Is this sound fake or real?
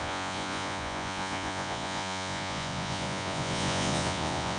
fake